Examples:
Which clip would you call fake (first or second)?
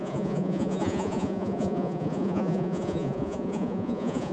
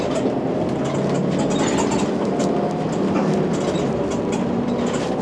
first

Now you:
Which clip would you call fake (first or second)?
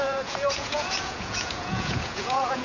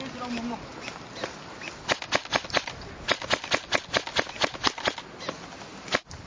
first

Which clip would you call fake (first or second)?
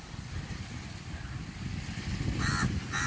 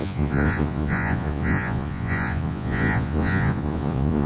second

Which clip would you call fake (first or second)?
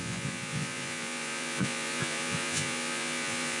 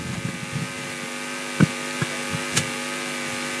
first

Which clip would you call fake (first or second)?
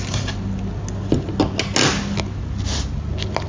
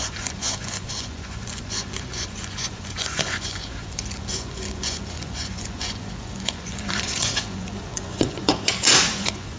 second